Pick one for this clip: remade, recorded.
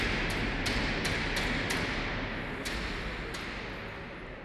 recorded